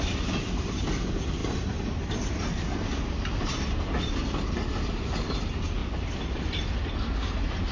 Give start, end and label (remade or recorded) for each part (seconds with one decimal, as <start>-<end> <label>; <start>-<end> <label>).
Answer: 0.0-7.7 recorded